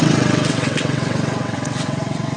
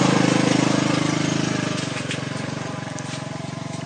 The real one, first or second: second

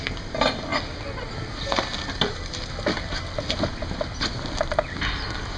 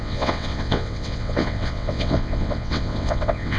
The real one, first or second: first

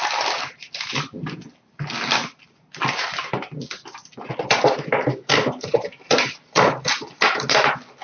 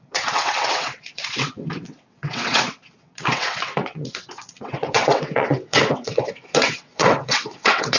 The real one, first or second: first